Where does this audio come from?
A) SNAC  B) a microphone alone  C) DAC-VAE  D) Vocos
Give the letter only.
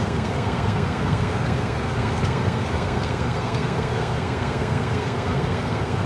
A